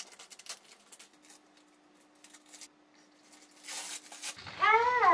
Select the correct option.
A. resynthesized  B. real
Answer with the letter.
B